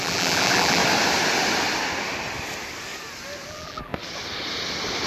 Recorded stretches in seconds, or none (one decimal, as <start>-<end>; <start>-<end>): 0.8-3.5; 3.9-5.1